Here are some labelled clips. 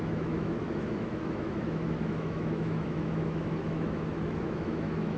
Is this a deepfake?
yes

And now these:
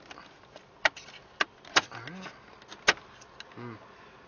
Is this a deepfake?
no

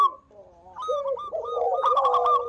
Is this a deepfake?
no